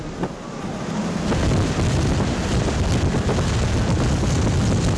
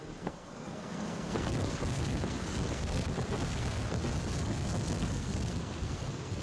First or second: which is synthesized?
second